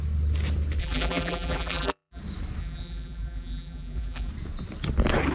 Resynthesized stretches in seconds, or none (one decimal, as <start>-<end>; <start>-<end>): 0.8-2.2; 2.6-4.3